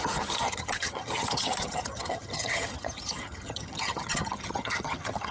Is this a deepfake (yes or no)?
yes